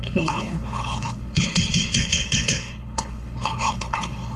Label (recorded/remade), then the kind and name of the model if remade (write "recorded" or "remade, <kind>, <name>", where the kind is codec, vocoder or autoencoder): remade, codec, HILCodec